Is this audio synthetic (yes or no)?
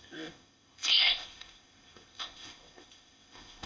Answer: yes